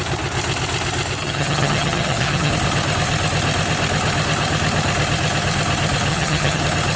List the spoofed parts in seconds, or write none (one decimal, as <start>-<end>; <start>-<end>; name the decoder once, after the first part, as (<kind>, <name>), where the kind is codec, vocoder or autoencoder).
1.2-2.5 (vocoder, HiFi-GAN); 6.1-6.6